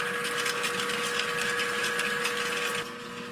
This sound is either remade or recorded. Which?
recorded